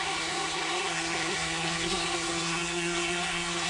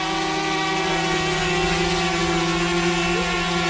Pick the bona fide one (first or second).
second